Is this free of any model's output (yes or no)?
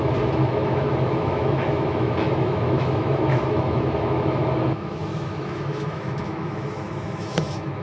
no